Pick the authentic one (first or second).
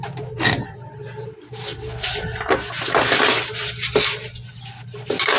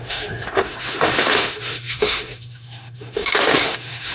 first